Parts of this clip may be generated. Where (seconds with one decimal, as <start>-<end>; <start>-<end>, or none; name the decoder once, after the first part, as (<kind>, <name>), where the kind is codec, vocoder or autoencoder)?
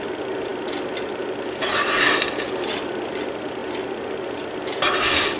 none